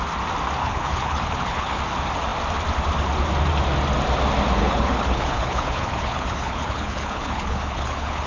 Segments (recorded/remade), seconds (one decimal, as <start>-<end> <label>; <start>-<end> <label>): 0.0-0.6 recorded; 0.6-1.8 remade; 1.8-4.6 recorded; 4.6-8.3 remade